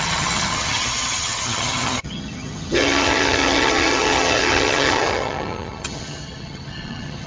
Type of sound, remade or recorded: remade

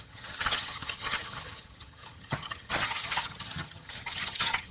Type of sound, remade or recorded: remade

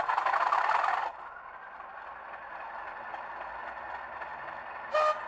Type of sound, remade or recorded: recorded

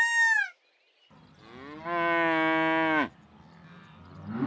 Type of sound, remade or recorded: recorded